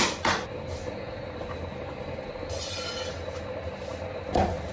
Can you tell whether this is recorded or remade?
recorded